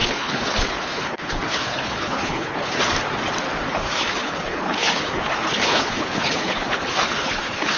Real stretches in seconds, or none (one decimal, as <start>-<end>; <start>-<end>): 2.8-3.7